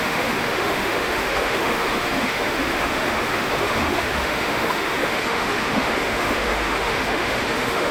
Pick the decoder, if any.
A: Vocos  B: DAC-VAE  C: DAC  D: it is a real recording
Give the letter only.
B